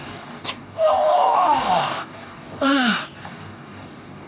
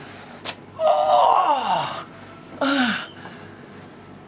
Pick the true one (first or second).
second